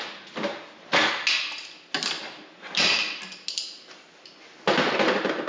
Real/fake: real